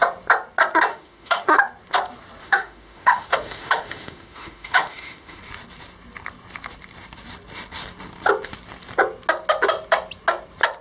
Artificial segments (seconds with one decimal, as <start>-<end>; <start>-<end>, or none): 0.9-1.6; 2.4-5.4